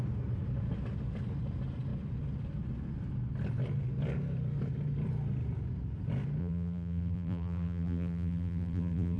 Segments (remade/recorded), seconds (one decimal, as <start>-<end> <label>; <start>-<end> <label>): 0.0-6.4 recorded; 6.4-9.2 remade